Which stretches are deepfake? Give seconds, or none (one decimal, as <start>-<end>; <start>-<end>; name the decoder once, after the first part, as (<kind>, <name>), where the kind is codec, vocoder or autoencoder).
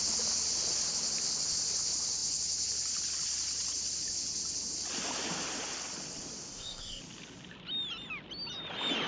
6.5-7.0 (codec, ZipCodec)